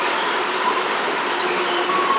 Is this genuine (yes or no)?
yes